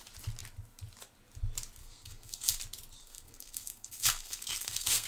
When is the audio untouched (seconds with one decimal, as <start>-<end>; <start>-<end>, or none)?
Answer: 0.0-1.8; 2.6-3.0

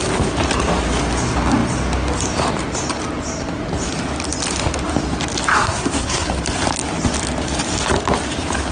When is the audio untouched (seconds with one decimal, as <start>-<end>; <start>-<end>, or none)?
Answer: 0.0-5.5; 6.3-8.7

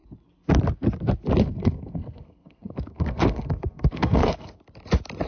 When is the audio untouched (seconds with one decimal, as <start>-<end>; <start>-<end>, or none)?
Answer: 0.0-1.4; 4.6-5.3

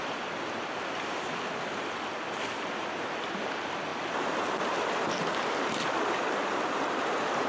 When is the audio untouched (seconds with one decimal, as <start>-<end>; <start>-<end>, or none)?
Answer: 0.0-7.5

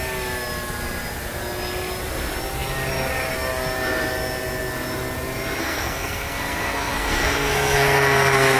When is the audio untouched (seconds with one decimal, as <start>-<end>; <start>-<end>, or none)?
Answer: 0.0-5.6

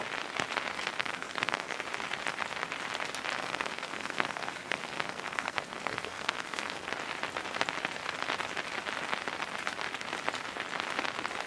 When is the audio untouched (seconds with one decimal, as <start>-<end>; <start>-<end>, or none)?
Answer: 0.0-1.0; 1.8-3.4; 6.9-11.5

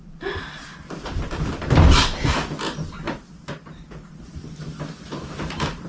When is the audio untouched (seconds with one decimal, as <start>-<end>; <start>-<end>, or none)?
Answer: 0.0-5.9